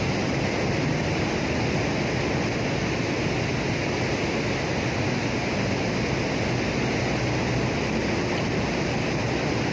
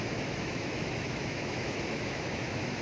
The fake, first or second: second